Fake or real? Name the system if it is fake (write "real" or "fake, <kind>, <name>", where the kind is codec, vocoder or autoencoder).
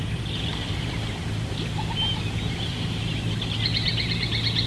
real